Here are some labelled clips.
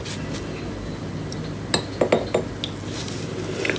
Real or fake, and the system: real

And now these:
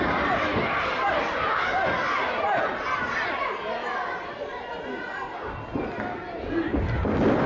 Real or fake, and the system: real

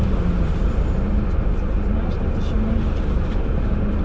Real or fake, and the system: real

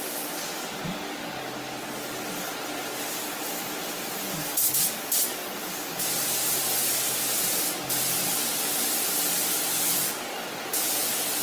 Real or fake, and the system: real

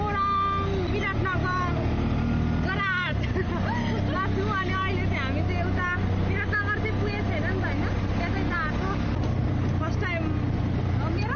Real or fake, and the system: real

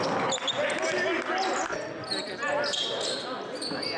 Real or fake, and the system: real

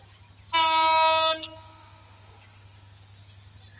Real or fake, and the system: real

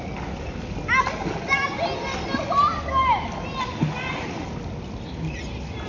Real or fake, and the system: real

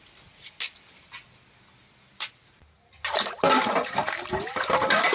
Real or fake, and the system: real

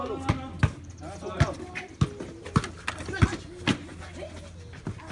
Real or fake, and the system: real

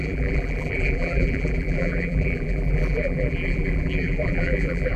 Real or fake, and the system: fake, vocoder, BigVGAN v2